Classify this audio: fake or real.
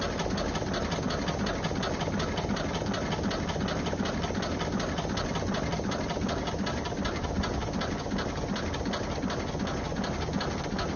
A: real